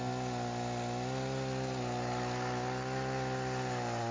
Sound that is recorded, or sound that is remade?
recorded